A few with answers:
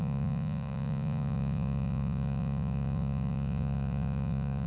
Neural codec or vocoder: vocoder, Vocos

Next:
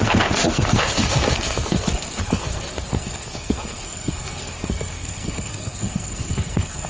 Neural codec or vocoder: codec, SNAC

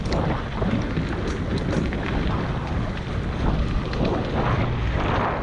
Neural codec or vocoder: none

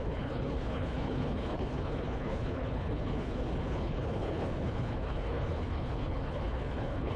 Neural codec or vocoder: codec, HILCodec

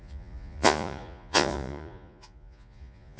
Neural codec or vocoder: vocoder, Vocos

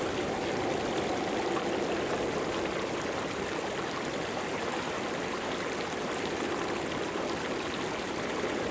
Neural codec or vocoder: none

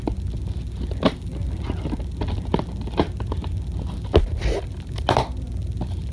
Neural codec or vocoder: none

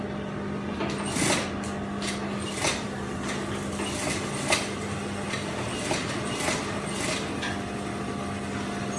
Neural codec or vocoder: none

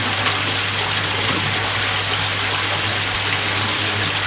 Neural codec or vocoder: none